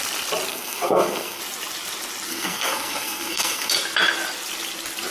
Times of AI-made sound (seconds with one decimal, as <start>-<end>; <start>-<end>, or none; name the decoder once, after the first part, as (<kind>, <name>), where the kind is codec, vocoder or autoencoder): 0.5-1.4 (codec, SNAC); 2.3-3.7